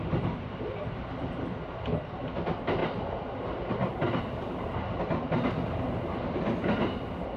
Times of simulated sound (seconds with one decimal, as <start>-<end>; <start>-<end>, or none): none